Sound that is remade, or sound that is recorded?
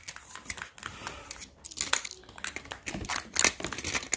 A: recorded